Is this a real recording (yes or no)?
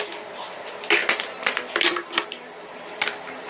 yes